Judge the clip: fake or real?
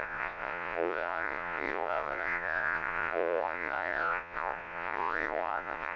fake